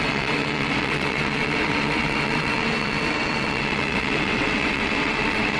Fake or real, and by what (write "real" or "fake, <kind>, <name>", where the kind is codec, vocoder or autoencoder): fake, vocoder, WaveNeXt